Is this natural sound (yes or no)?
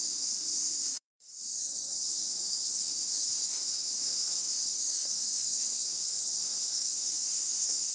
no